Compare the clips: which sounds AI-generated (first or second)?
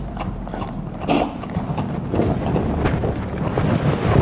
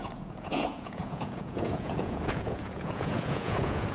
second